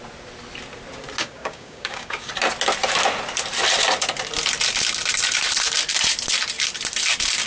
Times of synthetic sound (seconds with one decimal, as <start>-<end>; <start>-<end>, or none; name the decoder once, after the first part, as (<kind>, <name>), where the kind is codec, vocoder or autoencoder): 1.2-2.3 (codec, DAC)